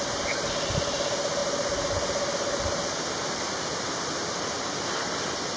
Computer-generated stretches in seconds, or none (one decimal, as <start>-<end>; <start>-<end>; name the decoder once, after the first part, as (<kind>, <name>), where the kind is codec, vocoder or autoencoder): none